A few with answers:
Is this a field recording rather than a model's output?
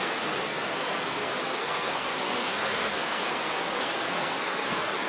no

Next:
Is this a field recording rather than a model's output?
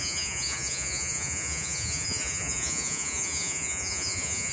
no